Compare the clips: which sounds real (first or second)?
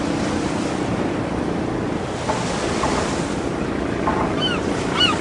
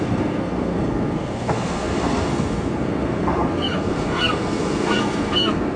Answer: first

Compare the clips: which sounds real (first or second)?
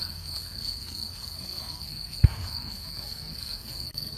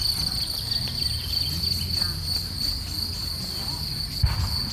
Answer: second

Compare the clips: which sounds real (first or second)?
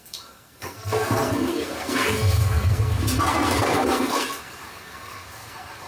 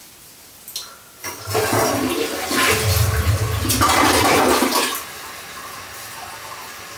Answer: second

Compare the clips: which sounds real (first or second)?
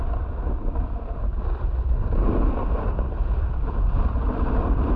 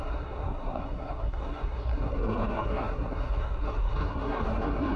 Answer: first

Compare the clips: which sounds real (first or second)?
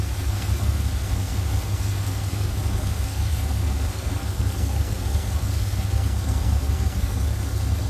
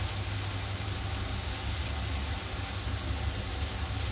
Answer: second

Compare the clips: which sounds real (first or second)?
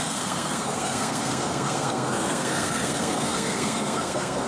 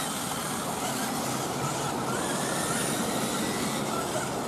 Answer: second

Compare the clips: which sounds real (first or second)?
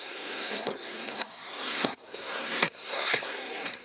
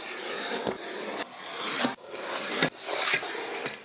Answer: second